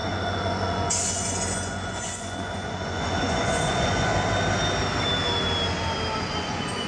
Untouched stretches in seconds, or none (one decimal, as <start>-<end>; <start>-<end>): 4.1-6.2